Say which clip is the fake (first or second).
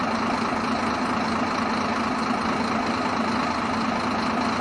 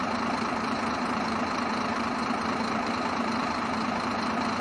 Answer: second